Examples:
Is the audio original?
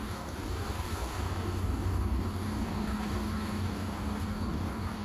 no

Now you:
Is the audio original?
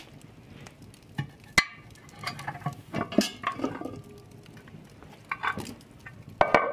yes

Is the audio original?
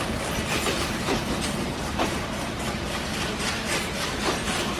no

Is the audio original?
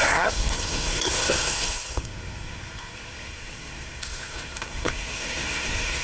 no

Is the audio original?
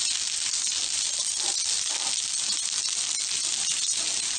yes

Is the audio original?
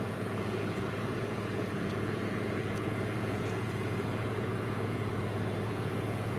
no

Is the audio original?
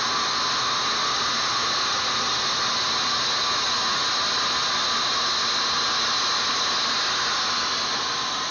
yes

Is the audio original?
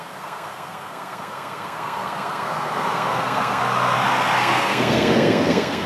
no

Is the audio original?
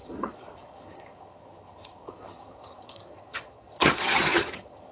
no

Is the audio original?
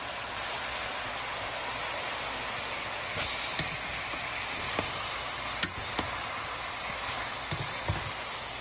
yes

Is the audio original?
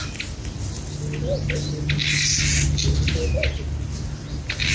yes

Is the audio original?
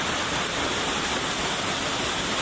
no